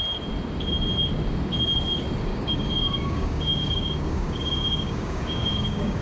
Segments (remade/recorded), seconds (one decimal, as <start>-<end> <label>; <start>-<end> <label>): 0.0-2.3 recorded; 2.3-6.0 remade